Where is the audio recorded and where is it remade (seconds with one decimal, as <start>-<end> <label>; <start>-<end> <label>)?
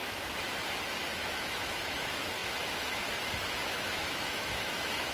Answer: 0.0-1.3 recorded; 1.3-5.1 remade